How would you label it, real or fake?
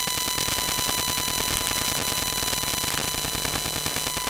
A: real